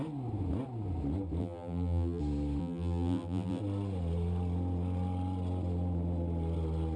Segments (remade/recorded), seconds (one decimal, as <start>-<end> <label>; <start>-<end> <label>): 0.0-1.4 recorded; 1.4-2.2 remade; 2.2-2.6 recorded; 2.6-3.6 remade; 3.6-7.0 recorded